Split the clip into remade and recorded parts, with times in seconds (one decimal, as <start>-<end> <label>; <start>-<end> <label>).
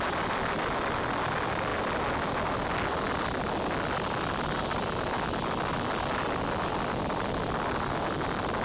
0.0-8.6 recorded